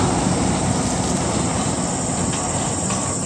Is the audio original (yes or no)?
yes